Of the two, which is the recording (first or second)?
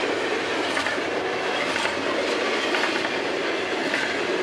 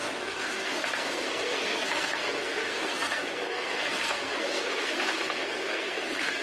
first